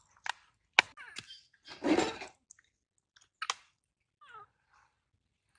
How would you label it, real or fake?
real